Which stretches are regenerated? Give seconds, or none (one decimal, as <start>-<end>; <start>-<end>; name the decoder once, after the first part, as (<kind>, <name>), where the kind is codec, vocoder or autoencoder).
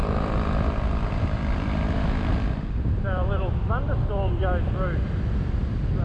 0.0-3.6 (vocoder, BigVGAN v2)